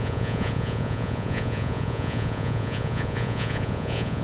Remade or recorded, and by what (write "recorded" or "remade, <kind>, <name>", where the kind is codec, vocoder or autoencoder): remade, vocoder, Vocos